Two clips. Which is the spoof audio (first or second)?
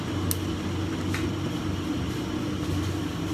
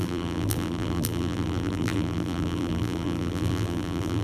second